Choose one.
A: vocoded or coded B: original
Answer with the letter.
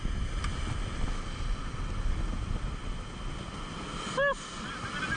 B